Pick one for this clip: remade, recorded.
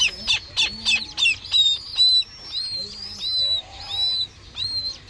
recorded